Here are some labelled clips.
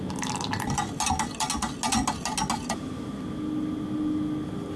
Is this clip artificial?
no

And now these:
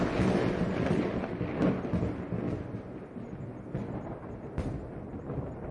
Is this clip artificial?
no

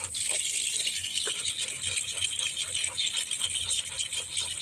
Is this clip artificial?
no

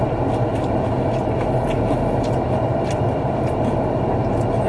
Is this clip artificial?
no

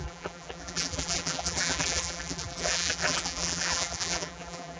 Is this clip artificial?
yes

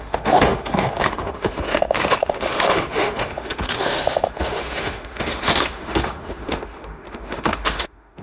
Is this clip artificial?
yes